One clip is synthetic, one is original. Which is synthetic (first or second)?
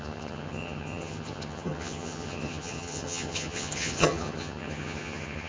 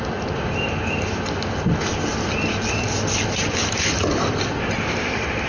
first